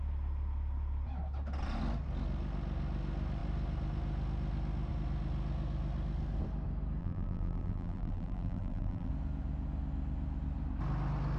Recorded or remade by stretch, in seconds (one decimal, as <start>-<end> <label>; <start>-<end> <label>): 0.0-7.0 recorded; 7.0-9.1 remade; 9.1-11.4 recorded